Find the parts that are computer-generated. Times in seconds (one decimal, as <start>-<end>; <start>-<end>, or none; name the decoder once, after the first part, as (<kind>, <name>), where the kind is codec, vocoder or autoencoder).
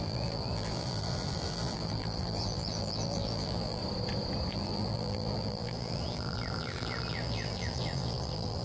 0.0-3.8 (vocoder, BigVGAN v2); 4.5-8.6